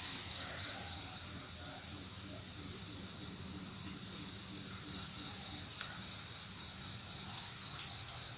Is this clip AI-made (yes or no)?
no